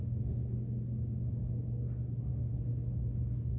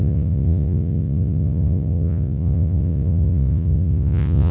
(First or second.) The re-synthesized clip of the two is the second